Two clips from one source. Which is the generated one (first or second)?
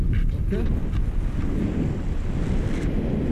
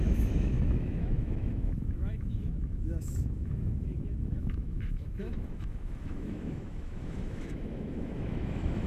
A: second